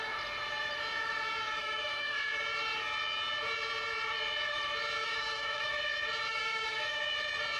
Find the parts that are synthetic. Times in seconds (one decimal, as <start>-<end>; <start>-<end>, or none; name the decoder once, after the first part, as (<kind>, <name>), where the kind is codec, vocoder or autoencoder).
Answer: 1.6-2.4 (autoencoder, DAC-VAE); 5.0-5.7; 6.3-7.0